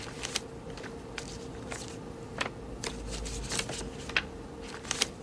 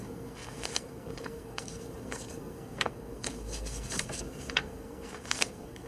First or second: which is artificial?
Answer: second